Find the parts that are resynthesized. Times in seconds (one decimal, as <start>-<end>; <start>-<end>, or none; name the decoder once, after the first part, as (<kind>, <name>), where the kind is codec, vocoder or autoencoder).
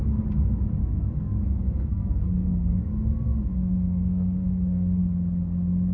0.8-2.9 (codec, SNAC); 3.5-5.0